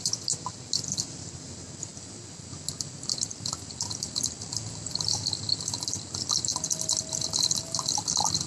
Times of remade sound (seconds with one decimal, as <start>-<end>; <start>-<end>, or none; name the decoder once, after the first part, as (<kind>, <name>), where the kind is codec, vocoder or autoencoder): none